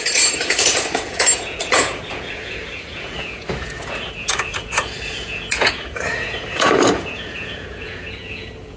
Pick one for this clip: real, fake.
fake